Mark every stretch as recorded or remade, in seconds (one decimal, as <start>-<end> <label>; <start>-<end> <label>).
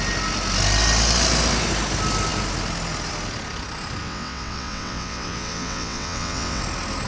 0.0-4.0 recorded; 4.0-6.6 remade; 6.6-7.1 recorded